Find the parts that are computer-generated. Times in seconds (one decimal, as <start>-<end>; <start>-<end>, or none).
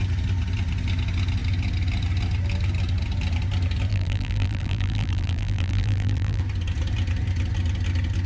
3.9-6.4